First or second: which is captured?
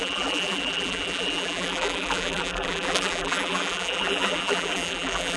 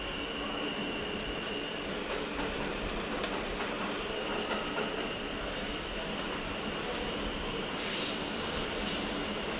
second